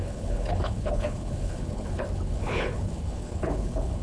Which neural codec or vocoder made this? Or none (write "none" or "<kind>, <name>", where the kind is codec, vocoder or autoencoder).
codec, HILCodec